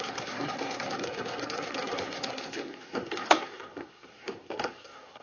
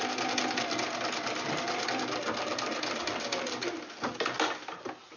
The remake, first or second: first